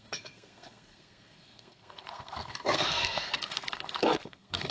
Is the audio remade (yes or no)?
yes